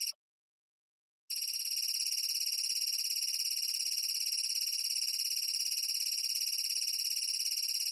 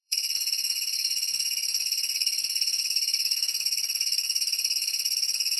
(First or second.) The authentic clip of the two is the first